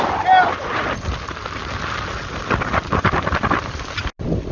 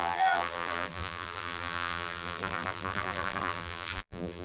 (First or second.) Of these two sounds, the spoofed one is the second